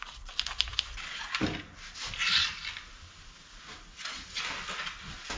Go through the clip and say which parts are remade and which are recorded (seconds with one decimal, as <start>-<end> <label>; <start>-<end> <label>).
0.0-5.4 recorded